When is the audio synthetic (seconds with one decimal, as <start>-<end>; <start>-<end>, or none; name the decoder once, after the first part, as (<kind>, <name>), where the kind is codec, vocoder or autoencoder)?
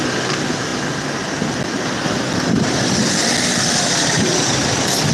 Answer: none